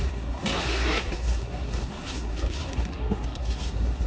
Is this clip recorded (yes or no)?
no